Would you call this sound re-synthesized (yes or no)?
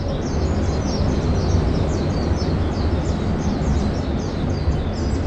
no